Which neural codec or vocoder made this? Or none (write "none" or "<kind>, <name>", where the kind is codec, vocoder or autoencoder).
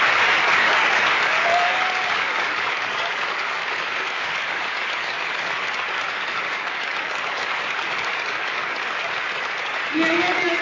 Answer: codec, DAC